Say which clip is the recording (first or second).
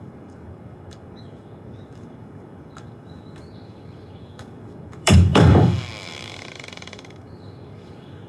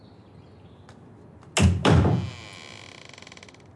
second